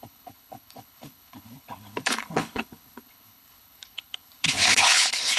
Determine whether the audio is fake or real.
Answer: fake